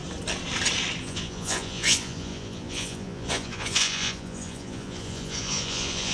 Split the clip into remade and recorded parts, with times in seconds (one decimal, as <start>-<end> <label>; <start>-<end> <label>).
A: 0.0-1.0 recorded; 1.0-6.1 remade